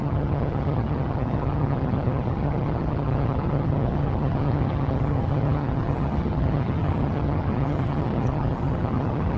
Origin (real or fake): fake